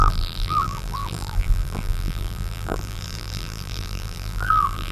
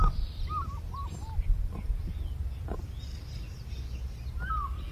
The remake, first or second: first